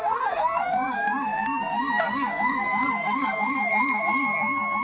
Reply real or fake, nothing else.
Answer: fake